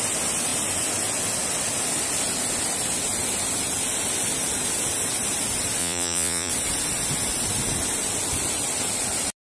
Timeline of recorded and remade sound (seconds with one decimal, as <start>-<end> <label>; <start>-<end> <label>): 0.0-5.8 recorded; 5.8-6.5 remade; 6.5-9.6 recorded